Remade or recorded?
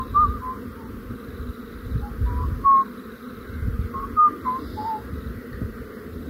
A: recorded